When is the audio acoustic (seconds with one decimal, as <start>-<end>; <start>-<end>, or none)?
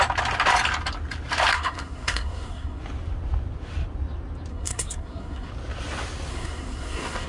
0.0-1.5; 2.8-4.5; 5.5-6.3